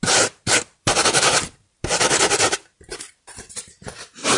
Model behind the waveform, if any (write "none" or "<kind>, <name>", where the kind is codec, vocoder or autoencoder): vocoder, BigVGAN v2